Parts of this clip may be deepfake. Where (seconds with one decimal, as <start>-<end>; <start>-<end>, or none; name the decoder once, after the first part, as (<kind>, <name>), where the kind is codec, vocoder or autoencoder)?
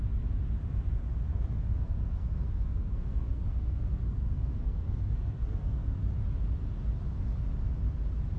1.3-6.1 (codec, SNAC)